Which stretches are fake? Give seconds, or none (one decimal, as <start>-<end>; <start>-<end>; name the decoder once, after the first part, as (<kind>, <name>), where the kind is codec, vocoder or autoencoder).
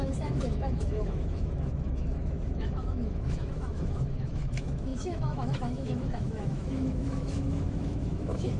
0.0-8.6 (autoencoder, DAC-VAE)